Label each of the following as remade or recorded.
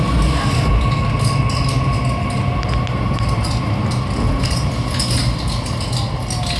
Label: recorded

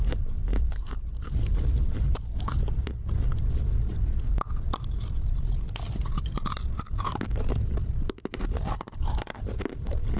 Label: recorded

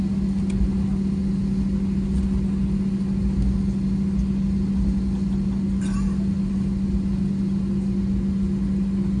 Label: recorded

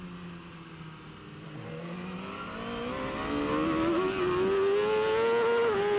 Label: recorded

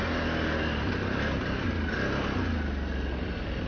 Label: recorded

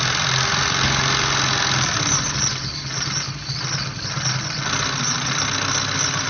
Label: recorded